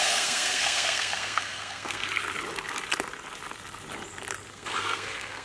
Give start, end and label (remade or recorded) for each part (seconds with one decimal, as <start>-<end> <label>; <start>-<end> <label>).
0.0-2.0 remade; 2.0-4.5 recorded; 4.5-5.4 remade